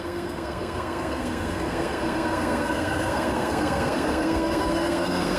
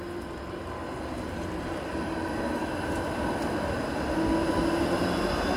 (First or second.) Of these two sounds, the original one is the second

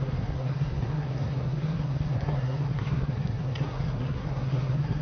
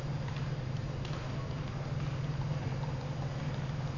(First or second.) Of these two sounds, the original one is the second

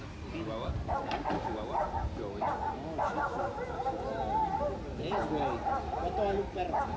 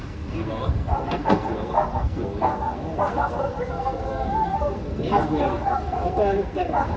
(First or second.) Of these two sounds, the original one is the first